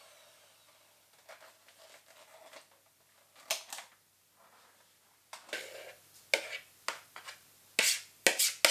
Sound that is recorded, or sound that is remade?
recorded